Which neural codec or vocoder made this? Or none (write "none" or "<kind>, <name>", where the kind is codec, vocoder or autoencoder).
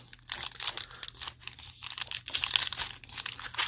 none